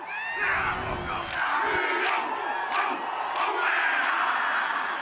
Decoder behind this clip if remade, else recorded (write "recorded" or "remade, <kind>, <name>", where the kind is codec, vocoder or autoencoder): recorded